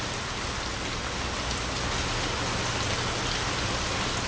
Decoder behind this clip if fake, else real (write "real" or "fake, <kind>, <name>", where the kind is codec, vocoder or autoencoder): real